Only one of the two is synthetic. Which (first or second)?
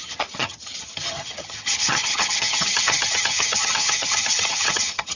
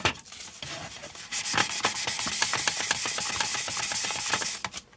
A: first